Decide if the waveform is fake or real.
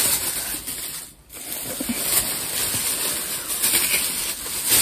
real